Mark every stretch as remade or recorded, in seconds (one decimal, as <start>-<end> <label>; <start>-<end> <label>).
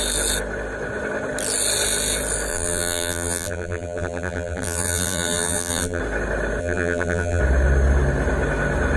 0.0-2.5 recorded; 2.5-6.0 remade; 6.0-6.6 recorded; 6.6-7.4 remade; 7.4-9.0 recorded